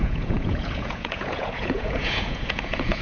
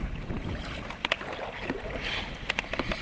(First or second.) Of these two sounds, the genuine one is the second